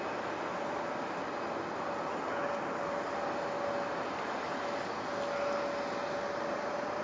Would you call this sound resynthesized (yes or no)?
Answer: no